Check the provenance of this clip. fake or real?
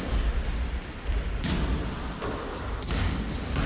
real